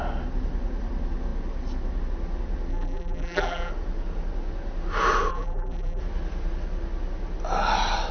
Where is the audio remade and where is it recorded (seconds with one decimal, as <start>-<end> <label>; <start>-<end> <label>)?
0.0-2.7 recorded; 2.7-3.7 remade; 3.7-5.3 recorded; 5.3-6.0 remade; 6.0-8.1 recorded